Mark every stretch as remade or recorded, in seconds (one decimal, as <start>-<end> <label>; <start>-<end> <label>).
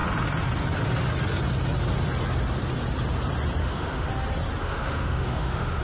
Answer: 0.0-3.6 recorded; 3.6-4.1 remade; 4.1-4.6 recorded; 4.6-5.8 remade